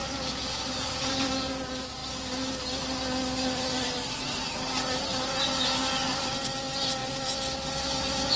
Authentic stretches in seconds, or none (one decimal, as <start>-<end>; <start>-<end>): 1.3-8.4